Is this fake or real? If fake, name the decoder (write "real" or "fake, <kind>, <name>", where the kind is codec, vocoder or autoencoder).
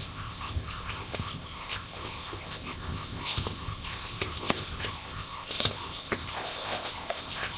fake, codec, ZipCodec